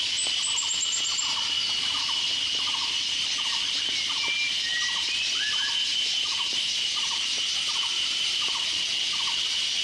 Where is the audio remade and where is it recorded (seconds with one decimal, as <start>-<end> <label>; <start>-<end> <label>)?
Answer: 0.0-4.7 recorded; 4.7-8.5 remade; 8.5-9.8 recorded

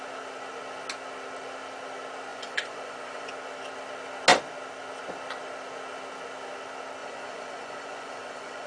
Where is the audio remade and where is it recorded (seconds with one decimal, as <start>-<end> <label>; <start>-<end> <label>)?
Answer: 0.0-2.3 recorded; 2.3-3.3 remade; 3.3-7.0 recorded; 7.0-8.7 remade

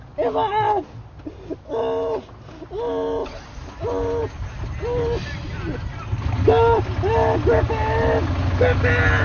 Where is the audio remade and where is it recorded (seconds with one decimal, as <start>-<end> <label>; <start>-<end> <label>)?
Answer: 0.0-9.2 recorded

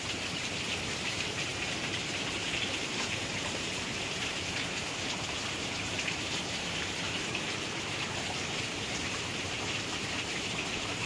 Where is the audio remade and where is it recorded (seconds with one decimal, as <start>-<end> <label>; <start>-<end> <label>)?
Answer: 0.0-11.1 remade

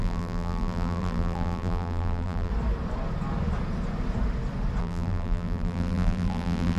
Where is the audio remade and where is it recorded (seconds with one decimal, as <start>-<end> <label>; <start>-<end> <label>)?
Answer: 0.0-2.5 remade; 2.5-4.8 recorded; 4.8-6.8 remade